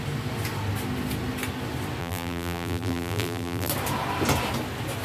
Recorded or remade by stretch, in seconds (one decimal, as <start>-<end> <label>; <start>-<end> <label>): 0.0-2.0 recorded; 2.0-3.7 remade; 3.7-5.0 recorded